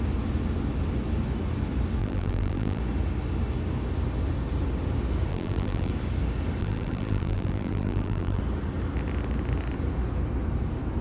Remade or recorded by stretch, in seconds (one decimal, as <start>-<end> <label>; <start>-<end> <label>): 0.0-2.0 recorded; 2.0-2.8 remade; 2.8-5.3 recorded; 5.3-5.9 remade; 5.9-6.6 recorded; 6.6-8.4 remade; 8.4-11.0 recorded